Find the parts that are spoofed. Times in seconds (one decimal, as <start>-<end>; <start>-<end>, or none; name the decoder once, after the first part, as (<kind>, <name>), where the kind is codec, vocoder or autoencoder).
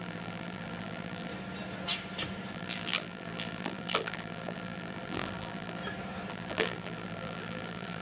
0.0-1.3 (vocoder, BigVGAN v2); 2.5-5.8; 6.3-8.0